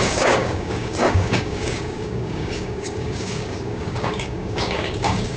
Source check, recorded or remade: remade